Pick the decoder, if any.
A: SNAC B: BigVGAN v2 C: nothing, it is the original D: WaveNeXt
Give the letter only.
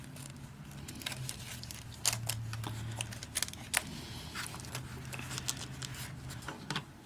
C